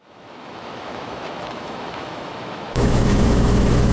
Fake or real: fake